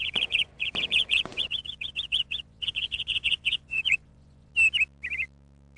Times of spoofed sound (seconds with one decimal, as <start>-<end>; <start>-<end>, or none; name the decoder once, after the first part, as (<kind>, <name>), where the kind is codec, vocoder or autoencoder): 0.0-4.5 (vocoder, Vocos)